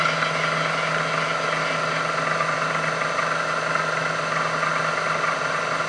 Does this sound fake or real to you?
real